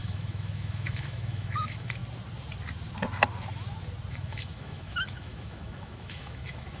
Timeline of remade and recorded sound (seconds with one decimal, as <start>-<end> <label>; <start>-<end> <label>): 0.0-2.0 remade; 2.0-4.1 recorded; 4.1-6.8 remade